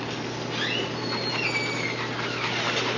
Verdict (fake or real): real